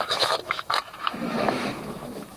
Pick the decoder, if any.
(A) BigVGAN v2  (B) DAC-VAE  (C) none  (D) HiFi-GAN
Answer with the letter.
B